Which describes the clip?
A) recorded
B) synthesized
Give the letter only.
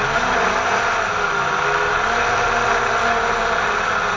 A